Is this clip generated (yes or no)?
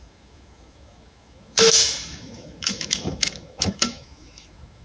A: yes